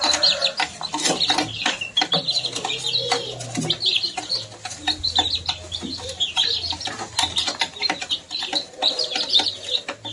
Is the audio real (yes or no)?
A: yes